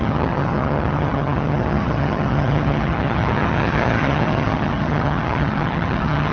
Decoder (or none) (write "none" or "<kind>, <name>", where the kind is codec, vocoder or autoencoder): vocoder, HiFi-GAN